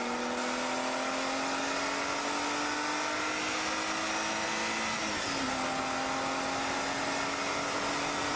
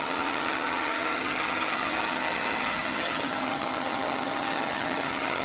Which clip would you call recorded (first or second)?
first